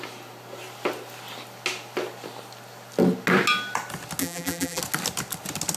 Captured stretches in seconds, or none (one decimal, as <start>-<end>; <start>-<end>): 0.0-4.2; 4.8-5.8